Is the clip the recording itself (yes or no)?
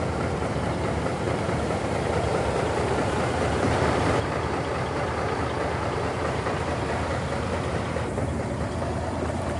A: no